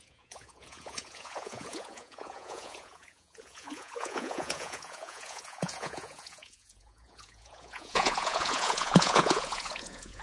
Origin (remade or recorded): remade